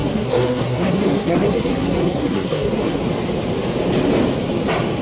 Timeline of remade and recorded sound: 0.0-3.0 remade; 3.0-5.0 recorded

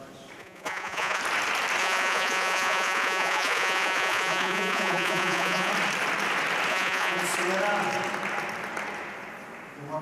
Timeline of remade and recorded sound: 0.0-0.4 recorded; 0.4-1.2 remade; 1.2-1.8 recorded; 1.8-5.7 remade; 5.7-6.7 recorded; 6.7-7.2 remade; 7.2-10.0 recorded

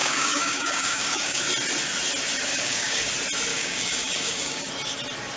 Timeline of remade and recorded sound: 0.0-1.4 remade; 1.4-2.5 recorded; 2.5-3.1 remade; 3.1-3.5 recorded; 3.5-4.7 remade; 4.7-5.4 recorded